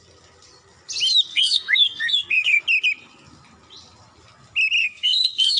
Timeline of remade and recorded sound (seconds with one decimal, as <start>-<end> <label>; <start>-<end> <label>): 0.0-1.3 recorded; 1.3-2.6 remade; 2.6-4.8 recorded; 4.8-5.6 remade